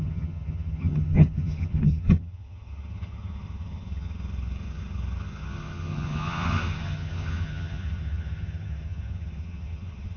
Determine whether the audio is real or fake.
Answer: fake